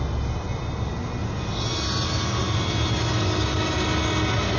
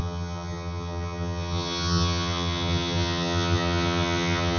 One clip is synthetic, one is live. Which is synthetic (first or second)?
second